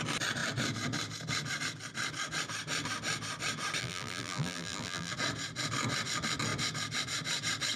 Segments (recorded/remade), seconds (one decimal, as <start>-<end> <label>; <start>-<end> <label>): 0.0-3.8 recorded; 3.8-5.1 remade; 5.1-7.8 recorded